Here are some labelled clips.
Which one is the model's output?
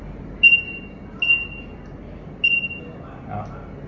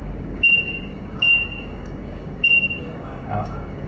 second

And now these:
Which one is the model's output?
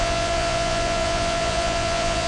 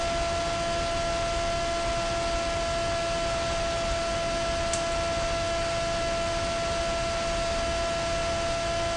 first